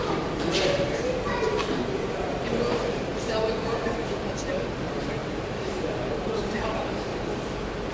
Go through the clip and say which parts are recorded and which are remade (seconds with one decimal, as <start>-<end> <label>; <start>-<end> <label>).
0.0-3.1 remade; 3.1-4.5 recorded; 4.5-7.1 remade; 7.1-7.9 recorded

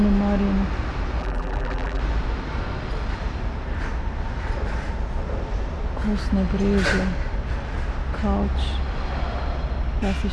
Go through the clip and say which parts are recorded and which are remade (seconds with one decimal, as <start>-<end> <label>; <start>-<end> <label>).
0.0-1.2 recorded; 1.2-2.0 remade; 2.0-10.3 recorded

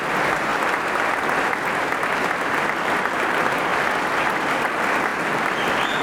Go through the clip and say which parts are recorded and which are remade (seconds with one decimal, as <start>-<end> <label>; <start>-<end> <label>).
0.0-0.5 remade; 0.5-2.8 recorded; 2.8-3.7 remade; 3.7-4.5 recorded; 4.5-6.0 remade

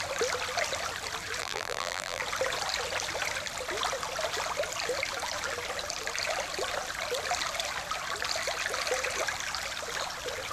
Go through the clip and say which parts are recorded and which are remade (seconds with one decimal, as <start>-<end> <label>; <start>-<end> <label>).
0.0-1.4 recorded; 1.4-2.2 remade; 2.2-10.5 recorded

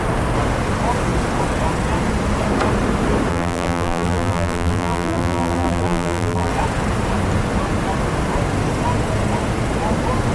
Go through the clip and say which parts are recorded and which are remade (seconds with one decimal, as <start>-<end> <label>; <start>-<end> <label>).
0.0-3.3 recorded; 3.3-6.5 remade; 6.5-10.3 recorded